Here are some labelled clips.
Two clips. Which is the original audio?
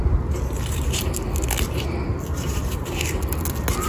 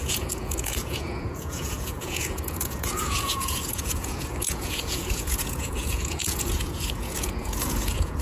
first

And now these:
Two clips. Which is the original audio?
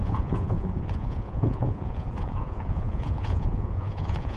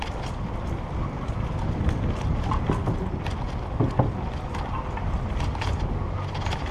second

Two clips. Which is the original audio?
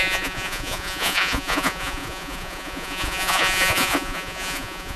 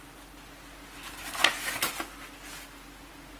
second